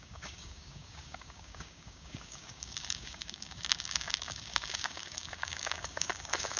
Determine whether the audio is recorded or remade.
remade